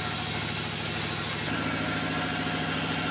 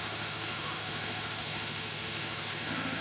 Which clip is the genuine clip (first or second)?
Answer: first